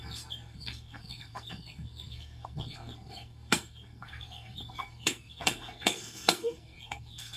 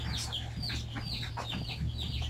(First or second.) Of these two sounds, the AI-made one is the first